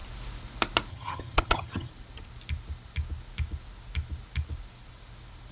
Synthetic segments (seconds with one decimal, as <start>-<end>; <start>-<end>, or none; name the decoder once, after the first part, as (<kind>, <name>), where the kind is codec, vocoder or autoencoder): 0.9-1.9 (vocoder, HiFi-GAN)

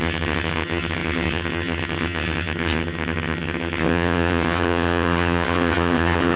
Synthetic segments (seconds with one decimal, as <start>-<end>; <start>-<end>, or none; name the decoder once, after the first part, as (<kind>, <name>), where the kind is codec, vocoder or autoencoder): 0.0-6.4 (vocoder, HiFi-GAN)

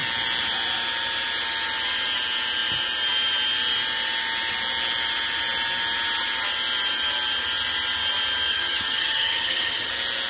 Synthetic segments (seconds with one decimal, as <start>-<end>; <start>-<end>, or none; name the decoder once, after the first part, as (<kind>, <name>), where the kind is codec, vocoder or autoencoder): 8.5-9.9 (vocoder, HiFi-GAN)

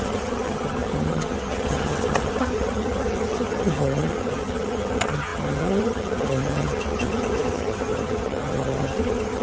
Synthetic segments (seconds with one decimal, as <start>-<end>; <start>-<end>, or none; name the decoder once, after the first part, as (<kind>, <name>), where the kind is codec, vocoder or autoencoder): 0.0-9.4 (vocoder, HiFi-GAN)

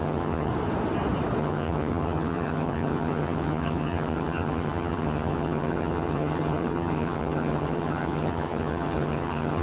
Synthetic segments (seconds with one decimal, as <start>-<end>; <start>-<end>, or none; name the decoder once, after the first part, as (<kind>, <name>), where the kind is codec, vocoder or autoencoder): 0.0-0.5 (vocoder, HiFi-GAN); 1.4-9.6